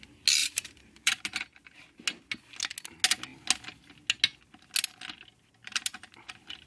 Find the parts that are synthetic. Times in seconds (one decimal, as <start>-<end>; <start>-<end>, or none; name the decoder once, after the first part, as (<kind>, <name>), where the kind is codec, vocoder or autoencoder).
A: 0.4-1.2 (vocoder, BigVGAN v2)